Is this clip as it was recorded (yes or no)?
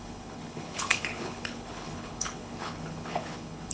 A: no